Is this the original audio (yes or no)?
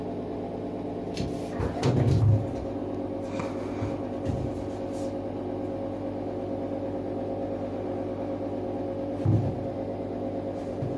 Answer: yes